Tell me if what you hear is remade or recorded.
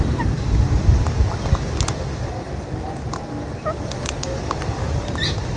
recorded